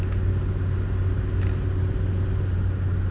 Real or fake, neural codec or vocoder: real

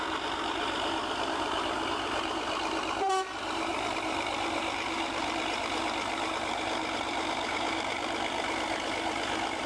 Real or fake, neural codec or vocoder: fake, vocoder, BigVGAN v2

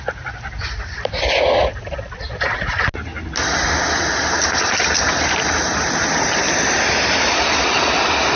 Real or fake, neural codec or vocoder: real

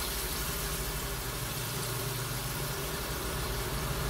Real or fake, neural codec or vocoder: fake, vocoder, BigVGAN v2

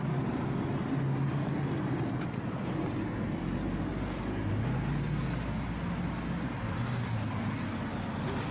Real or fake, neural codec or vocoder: real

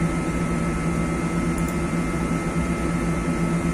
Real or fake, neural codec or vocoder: real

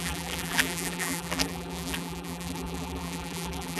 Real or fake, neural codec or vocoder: fake, vocoder, BigVGAN v2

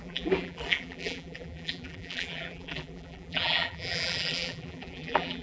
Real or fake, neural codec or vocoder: fake, vocoder, BigVGAN v2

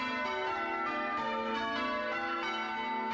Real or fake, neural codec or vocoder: real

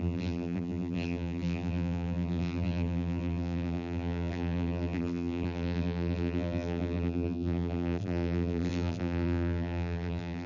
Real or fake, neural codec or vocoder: fake, vocoder, BigVGAN v2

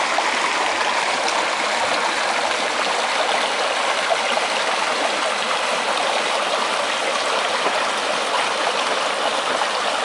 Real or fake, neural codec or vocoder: real